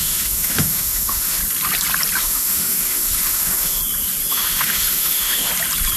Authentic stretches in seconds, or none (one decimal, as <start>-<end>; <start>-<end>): 1.4-2.2; 3.8-4.3; 5.5-6.0